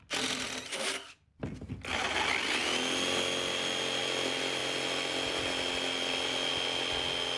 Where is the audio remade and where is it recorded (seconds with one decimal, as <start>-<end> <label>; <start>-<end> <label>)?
0.0-7.4 recorded